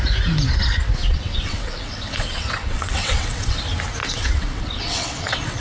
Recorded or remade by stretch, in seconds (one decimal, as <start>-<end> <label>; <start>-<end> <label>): 0.0-1.0 recorded; 1.0-3.6 remade; 3.6-4.0 recorded; 4.0-5.6 remade